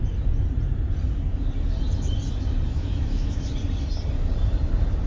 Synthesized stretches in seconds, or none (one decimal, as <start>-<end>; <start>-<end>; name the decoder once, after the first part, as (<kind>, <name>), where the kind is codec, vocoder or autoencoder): 2.7-3.5 (autoencoder, DAC-VAE)